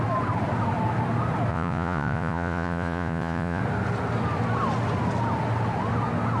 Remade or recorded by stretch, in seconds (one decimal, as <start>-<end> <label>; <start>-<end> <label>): 0.0-1.5 recorded; 1.5-3.6 remade; 3.6-6.4 recorded